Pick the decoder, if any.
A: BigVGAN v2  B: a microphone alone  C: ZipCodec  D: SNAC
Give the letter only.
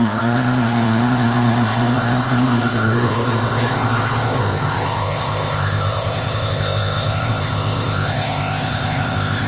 C